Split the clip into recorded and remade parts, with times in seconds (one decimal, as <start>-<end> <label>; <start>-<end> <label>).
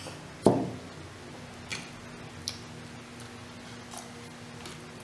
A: 0.0-5.0 recorded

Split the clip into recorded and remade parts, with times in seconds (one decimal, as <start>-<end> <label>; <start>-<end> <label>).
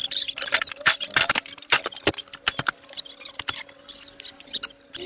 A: 0.0-5.1 recorded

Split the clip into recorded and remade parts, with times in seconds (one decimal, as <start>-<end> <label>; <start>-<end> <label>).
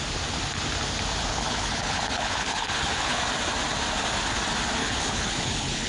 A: 0.0-1.3 recorded; 1.3-3.2 remade; 3.2-4.8 recorded; 4.8-5.9 remade